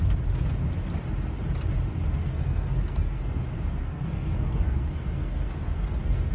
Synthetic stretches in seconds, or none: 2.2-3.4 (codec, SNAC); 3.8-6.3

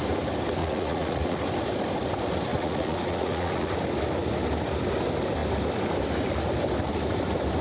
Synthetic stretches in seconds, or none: 0.6-1.4 (vocoder, Vocos); 2.5-3.7

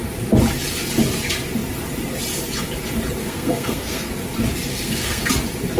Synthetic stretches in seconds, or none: 3.2-4.1 (codec, SNAC); 4.7-5.3

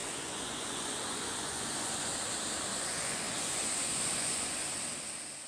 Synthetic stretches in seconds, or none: 0.0-2.1 (vocoder, Vocos); 2.7-4.7

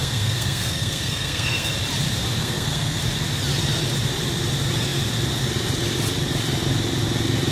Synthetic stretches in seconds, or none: 0.0-1.7 (codec, SNAC); 2.4-3.0

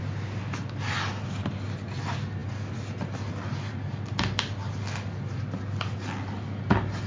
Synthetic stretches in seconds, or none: none

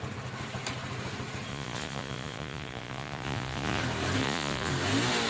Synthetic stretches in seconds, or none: 1.5-3.8 (vocoder, Vocos); 4.2-4.7

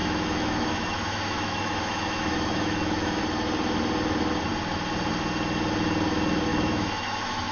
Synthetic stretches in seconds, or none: 0.0-3.2 (autoencoder, DAC-VAE); 6.5-7.5